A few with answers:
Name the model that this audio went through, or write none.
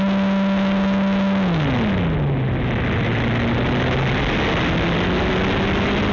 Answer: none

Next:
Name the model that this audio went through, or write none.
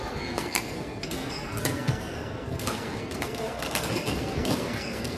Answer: codec, SNAC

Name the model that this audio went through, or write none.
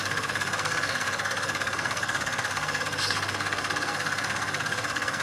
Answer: codec, SNAC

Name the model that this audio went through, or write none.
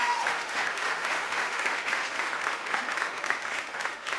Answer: autoencoder, DAC-VAE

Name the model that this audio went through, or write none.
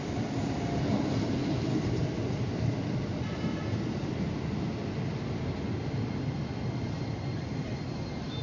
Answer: none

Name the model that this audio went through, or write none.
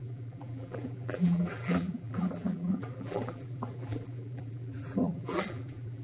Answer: vocoder, BigVGAN v2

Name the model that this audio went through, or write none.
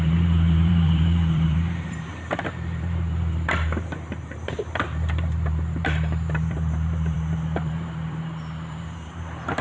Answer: vocoder, BigVGAN v2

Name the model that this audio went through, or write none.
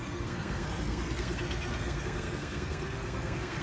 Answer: codec, SNAC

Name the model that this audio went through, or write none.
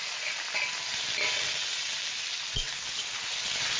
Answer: none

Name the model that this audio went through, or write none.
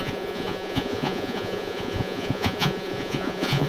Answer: vocoder, Vocos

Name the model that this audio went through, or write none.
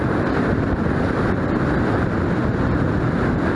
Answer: vocoder, BigVGAN v2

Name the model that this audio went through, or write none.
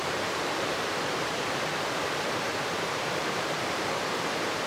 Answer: vocoder, BigVGAN v2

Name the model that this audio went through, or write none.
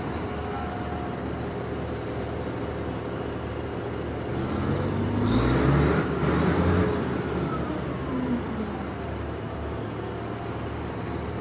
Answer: none